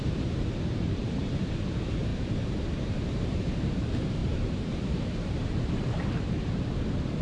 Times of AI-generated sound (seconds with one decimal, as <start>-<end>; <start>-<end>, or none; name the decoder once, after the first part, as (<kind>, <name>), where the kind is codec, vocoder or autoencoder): 0.0-2.1 (vocoder, BigVGAN v2); 3.1-7.2